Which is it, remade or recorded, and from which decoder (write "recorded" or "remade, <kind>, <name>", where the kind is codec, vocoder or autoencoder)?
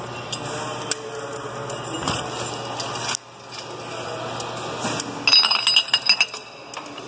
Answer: recorded